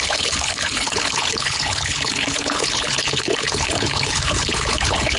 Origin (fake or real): fake